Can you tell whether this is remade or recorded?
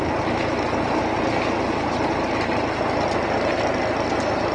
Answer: recorded